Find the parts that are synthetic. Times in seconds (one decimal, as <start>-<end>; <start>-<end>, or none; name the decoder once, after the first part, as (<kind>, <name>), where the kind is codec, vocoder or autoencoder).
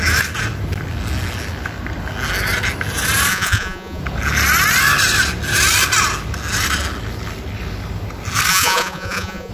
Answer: 3.3-4.0 (vocoder, Vocos); 8.5-9.5